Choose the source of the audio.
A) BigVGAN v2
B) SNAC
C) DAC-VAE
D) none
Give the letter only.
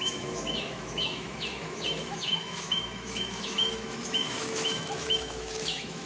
C